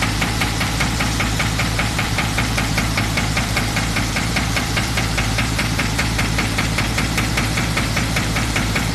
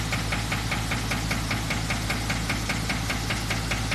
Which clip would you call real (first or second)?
second